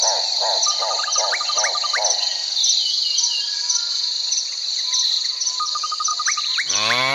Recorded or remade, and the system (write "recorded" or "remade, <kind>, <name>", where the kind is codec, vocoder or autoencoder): recorded